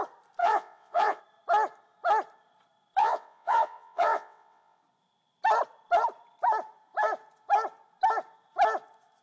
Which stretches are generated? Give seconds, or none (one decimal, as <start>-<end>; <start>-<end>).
0.4-1.2; 3.0-4.8